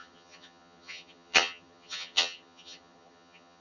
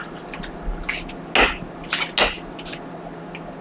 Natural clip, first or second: second